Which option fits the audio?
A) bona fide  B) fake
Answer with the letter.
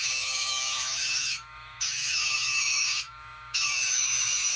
B